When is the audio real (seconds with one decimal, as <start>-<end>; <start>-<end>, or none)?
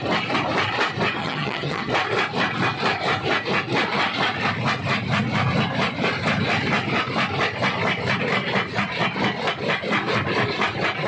0.0-1.2; 1.9-11.1